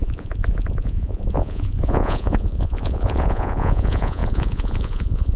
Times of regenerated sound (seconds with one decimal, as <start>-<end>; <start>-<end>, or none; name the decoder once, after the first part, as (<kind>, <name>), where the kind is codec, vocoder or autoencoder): 0.0-5.4 (vocoder, Vocos)